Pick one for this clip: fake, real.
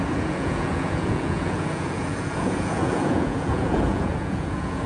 fake